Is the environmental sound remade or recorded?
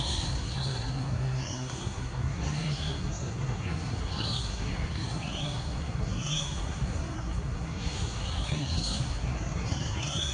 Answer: remade